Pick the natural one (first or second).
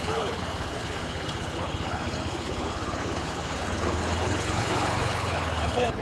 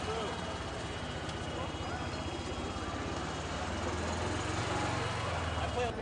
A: second